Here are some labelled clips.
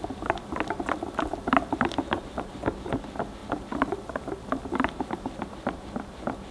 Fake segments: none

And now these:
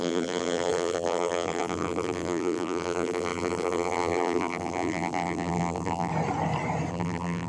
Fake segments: 0.0-6.1 (vocoder, BigVGAN v2); 6.9-7.5

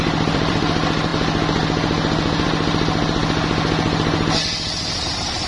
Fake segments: 0.0-1.1 (vocoder, BigVGAN v2); 4.4-5.5

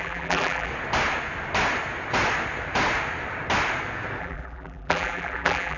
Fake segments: 0.0-0.7 (vocoder, BigVGAN v2); 4.2-5.8

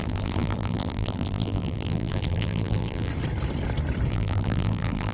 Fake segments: 0.0-3.1 (vocoder, BigVGAN v2); 4.1-5.1

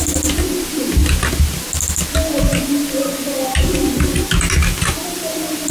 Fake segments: 0.0-1.0 (vocoder, BigVGAN v2); 4.4-5.7

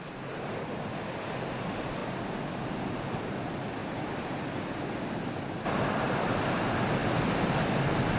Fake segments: 3.8-6.4 (vocoder, BigVGAN v2); 7.0-7.5